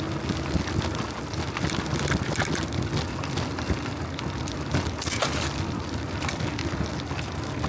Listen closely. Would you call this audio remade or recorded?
recorded